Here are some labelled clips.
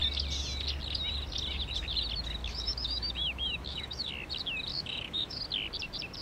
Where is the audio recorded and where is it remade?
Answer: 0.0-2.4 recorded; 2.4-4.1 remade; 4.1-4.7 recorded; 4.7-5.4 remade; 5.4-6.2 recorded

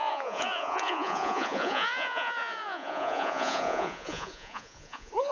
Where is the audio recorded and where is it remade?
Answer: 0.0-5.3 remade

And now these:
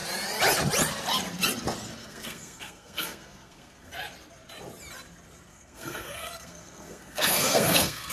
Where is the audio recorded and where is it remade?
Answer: 0.0-2.0 recorded; 2.0-3.9 remade; 3.9-5.5 recorded; 5.5-8.1 remade